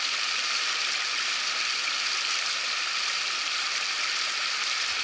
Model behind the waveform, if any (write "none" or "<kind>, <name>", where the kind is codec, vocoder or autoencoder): none